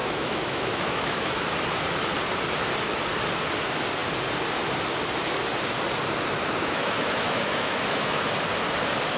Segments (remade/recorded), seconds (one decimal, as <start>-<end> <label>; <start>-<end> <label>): 0.0-1.5 remade; 1.5-6.6 recorded; 6.6-8.2 remade; 8.2-9.2 recorded